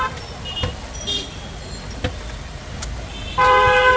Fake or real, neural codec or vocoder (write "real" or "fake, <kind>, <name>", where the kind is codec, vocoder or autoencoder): real